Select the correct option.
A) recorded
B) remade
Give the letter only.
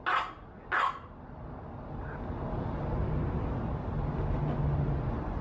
A